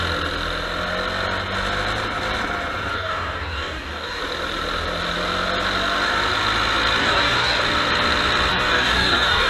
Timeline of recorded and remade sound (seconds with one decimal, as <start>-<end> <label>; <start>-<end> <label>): 0.0-2.9 recorded; 2.9-4.2 remade; 4.2-7.0 recorded; 7.0-7.6 remade; 7.6-8.5 recorded; 8.5-9.5 remade